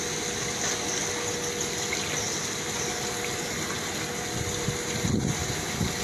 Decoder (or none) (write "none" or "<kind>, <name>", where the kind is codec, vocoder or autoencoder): none